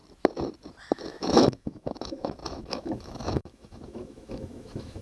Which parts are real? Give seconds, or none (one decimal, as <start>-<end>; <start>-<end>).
0.0-0.8